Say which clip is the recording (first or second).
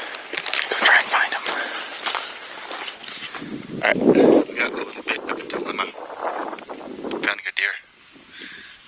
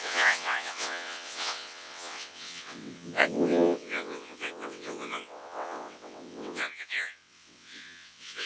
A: first